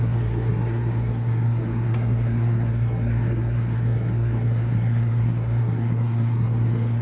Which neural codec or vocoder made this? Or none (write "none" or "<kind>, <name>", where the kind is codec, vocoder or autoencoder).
codec, SNAC